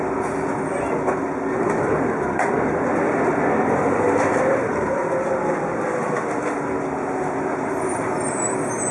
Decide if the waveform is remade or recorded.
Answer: remade